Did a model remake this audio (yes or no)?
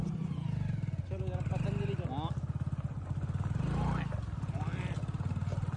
no